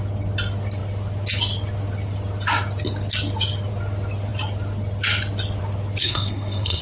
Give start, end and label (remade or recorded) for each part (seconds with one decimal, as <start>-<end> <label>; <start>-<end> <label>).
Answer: 0.0-6.0 recorded; 6.0-6.8 remade